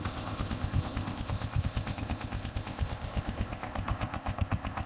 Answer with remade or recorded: remade